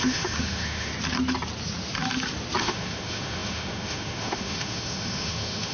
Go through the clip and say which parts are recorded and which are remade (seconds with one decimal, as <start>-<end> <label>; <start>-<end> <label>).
0.0-0.9 remade; 0.9-2.6 recorded; 2.6-5.7 remade